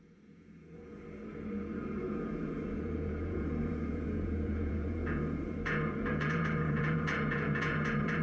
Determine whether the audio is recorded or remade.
remade